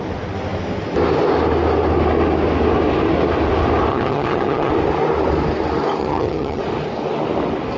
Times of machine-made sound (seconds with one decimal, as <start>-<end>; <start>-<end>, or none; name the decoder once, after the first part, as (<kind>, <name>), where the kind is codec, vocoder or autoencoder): 3.9-4.7 (vocoder, HiFi-GAN); 6.0-6.6